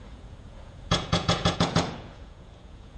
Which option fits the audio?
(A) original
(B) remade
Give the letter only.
B